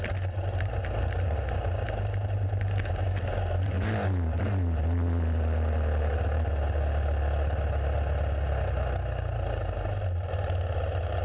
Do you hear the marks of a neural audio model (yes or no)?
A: no